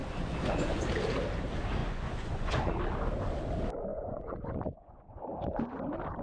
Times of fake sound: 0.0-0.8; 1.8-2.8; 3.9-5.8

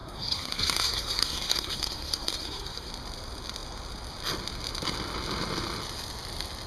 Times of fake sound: 0.0-2.9

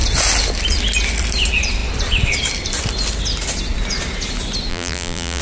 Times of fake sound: 4.7-5.4

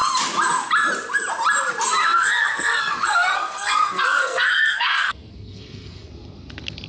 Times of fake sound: 2.0-6.1

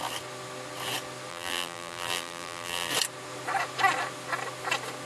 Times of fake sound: 1.3-2.9

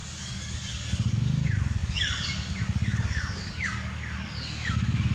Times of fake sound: 0.0-5.1

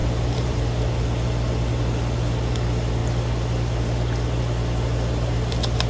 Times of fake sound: 0.0-0.6